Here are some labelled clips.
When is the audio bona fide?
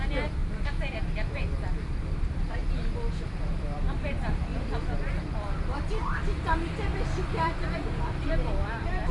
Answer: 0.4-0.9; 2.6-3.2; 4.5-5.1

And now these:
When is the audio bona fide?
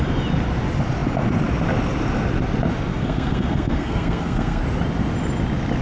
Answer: 0.0-2.9; 4.6-5.8